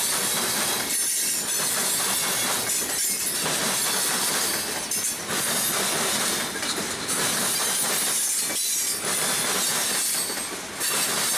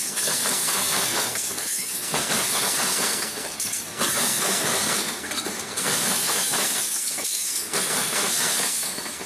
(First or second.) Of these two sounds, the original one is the first